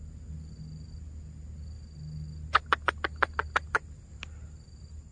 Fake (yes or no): no